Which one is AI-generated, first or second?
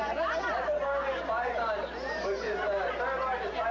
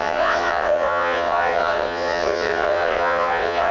second